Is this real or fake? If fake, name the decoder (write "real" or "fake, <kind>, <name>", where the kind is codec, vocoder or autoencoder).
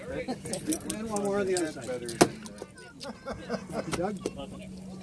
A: real